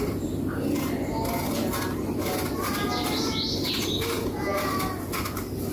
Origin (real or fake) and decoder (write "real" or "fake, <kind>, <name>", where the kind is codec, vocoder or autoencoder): real